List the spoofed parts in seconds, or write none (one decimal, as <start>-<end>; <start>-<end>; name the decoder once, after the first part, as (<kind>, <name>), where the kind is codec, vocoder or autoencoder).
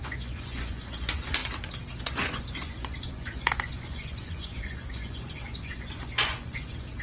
0.0-1.4 (vocoder, Vocos); 2.0-7.0